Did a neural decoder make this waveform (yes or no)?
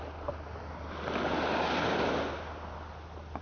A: no